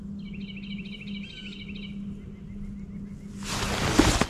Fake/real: real